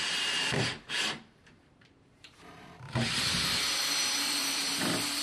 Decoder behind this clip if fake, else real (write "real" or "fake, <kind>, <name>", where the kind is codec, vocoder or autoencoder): fake, vocoder, BigVGAN v2